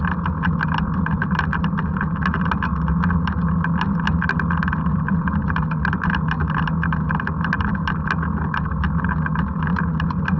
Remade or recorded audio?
recorded